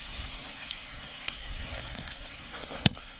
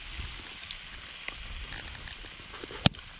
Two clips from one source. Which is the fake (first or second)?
first